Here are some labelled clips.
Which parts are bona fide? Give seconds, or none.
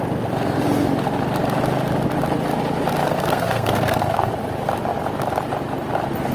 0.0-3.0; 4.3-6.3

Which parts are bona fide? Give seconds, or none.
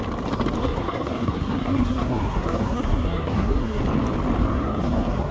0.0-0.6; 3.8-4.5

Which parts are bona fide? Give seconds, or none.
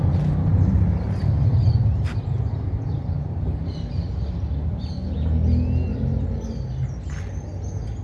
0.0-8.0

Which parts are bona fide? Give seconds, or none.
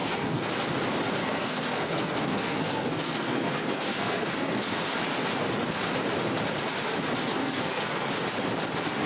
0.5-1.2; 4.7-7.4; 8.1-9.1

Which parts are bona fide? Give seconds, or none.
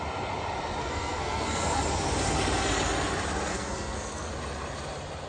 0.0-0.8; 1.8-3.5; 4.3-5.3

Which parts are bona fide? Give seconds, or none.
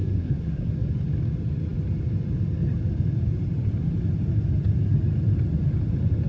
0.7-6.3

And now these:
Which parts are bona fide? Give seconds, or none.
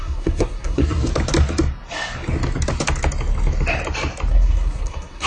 1.1-4.3